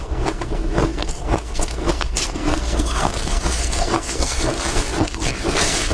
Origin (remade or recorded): remade